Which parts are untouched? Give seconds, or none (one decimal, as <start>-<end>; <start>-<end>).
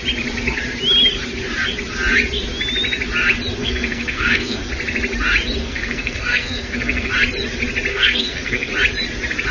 0.0-3.6; 4.6-5.6; 7.1-7.9; 8.7-9.5